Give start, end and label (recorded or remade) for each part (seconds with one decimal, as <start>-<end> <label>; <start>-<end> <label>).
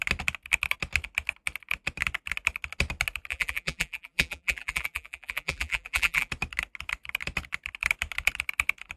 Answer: 0.0-3.3 recorded; 3.3-6.3 remade; 6.3-9.0 recorded